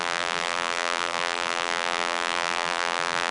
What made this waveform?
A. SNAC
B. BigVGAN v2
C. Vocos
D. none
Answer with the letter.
B